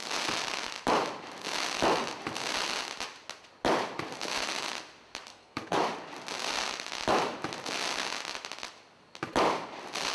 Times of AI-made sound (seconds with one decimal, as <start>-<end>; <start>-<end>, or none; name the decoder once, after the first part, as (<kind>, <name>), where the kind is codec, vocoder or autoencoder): 5.3-5.8 (codec, SNAC)